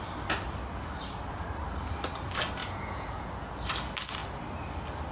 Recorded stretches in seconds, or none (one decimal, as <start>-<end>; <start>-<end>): 0.0-2.6; 3.5-5.1